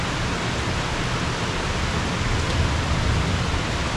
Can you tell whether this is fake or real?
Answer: real